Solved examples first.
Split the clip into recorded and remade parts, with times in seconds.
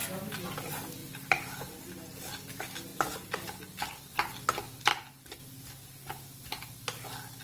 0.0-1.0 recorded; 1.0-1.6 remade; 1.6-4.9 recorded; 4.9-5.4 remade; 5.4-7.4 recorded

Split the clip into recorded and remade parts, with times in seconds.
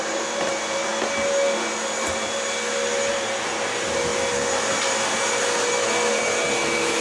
0.0-0.9 remade; 0.9-3.1 recorded; 3.1-4.1 remade; 4.1-6.1 recorded; 6.1-7.0 remade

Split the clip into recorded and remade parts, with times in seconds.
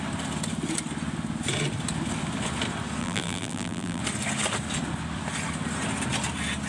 0.0-3.0 recorded; 3.0-4.0 remade; 4.0-6.7 recorded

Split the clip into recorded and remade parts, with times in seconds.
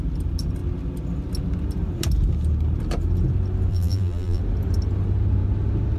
0.0-3.7 recorded; 3.7-4.4 remade; 4.4-6.0 recorded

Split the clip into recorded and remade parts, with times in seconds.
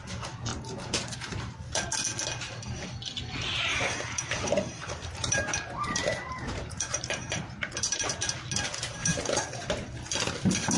0.0-0.5 recorded; 0.5-1.8 remade; 1.8-3.5 recorded; 3.5-8.1 remade; 8.1-9.0 recorded; 9.0-9.7 remade; 9.7-10.8 recorded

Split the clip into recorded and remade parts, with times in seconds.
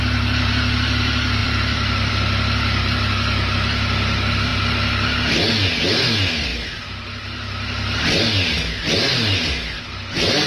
0.0-1.4 recorded; 1.4-2.1 remade; 2.1-10.5 recorded